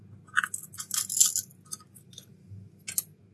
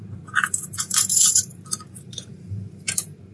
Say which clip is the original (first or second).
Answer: first